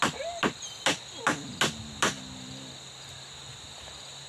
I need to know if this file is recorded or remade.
recorded